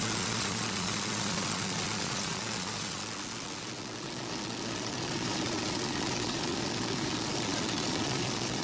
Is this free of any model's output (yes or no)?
no